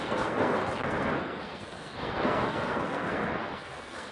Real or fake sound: fake